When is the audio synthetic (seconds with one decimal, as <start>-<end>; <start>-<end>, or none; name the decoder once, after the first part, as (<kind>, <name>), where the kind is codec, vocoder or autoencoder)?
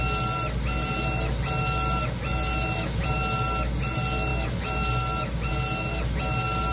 none